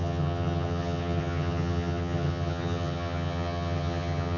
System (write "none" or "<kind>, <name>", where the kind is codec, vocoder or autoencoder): vocoder, HiFi-GAN